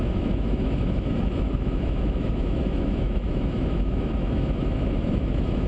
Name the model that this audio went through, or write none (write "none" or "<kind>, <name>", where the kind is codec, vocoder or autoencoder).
autoencoder, DAC-VAE